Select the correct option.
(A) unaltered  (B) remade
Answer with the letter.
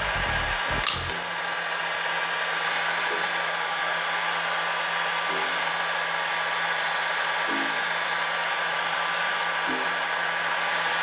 A